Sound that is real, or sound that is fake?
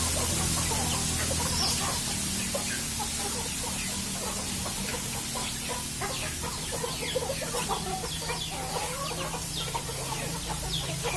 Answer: real